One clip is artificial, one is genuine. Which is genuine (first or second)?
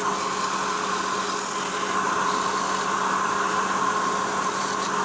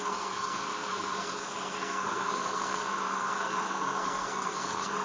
first